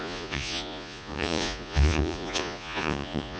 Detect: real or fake fake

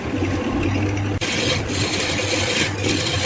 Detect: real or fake real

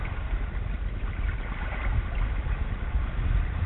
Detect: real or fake real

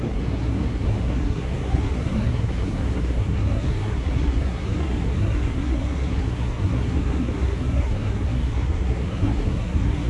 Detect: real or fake fake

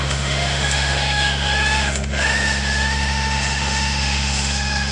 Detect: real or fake fake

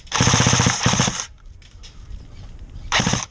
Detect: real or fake fake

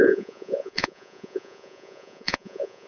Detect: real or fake fake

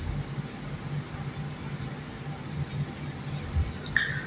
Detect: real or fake real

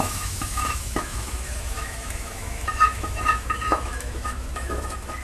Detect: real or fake fake